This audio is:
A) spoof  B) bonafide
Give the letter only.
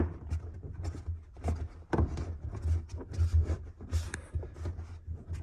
B